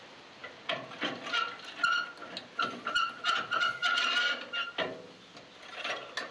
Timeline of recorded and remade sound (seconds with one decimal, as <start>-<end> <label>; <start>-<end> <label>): 0.0-6.3 recorded